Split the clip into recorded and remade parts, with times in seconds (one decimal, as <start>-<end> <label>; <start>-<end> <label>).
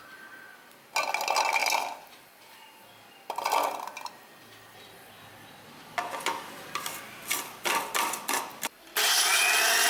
0.0-8.5 recorded; 8.5-9.3 remade; 9.3-9.9 recorded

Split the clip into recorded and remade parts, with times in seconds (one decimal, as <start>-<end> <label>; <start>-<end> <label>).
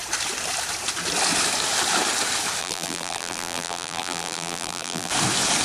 0.0-2.6 recorded; 2.6-5.1 remade; 5.1-5.6 recorded